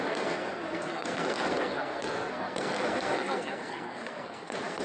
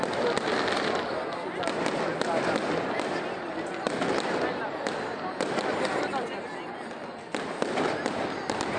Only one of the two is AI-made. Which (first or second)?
first